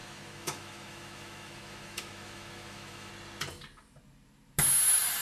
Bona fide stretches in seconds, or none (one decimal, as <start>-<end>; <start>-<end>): 3.1-5.2

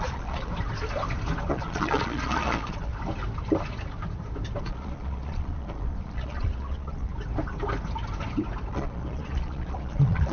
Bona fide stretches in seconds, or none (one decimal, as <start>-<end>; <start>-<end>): 0.5-1.5; 2.9-4.6; 7.1-8.7

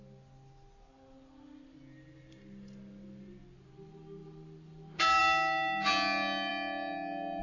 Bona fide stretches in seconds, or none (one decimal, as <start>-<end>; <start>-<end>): 0.0-7.4

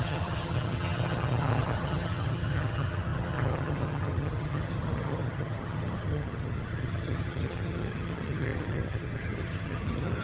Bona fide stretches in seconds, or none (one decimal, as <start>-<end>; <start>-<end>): none

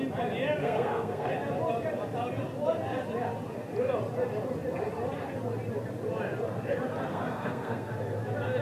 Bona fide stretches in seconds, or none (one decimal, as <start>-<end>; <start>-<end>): 0.0-0.6; 1.3-7.1; 7.9-8.6

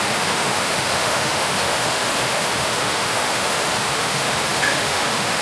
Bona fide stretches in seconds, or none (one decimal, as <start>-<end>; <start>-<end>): none